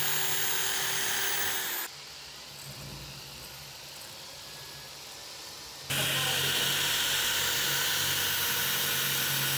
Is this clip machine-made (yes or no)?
no